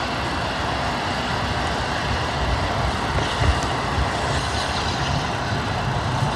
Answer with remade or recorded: recorded